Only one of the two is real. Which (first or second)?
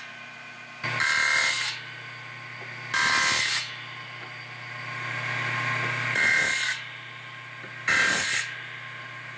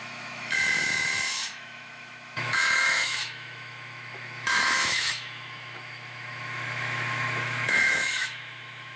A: first